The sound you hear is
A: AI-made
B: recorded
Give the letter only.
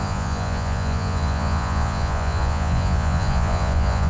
A